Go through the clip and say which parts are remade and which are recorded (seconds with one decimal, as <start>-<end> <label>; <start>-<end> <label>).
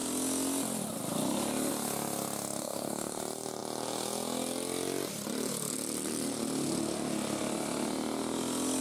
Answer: 0.0-2.6 recorded; 2.6-3.2 remade; 3.2-8.8 recorded